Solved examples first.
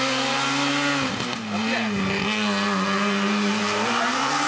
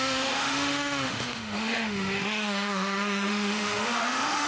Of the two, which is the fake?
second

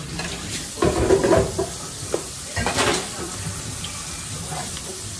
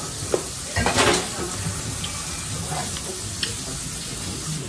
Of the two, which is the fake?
first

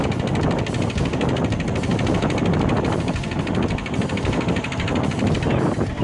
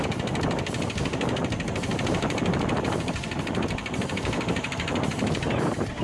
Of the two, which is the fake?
second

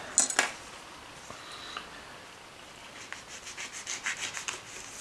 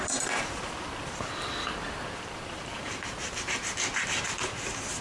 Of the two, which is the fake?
second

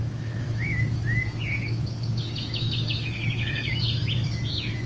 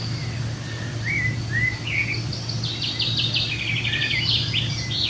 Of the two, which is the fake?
first